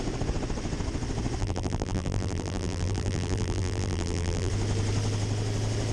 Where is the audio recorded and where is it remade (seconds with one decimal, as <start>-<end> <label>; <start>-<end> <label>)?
0.0-1.4 recorded; 1.4-4.5 remade; 4.5-5.9 recorded